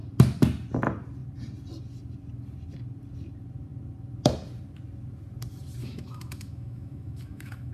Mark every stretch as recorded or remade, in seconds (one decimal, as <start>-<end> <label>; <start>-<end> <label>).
0.0-5.8 recorded; 5.8-7.7 remade